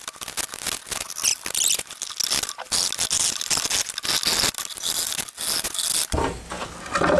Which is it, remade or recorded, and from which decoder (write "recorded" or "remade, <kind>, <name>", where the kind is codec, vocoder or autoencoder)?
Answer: recorded